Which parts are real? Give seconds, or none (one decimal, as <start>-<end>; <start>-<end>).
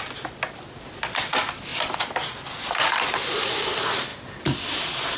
0.0-5.2